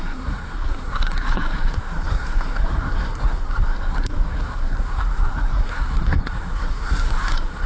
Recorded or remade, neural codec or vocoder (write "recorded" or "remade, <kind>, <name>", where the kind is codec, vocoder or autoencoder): remade, codec, SNAC